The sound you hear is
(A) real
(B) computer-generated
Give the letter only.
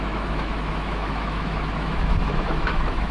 B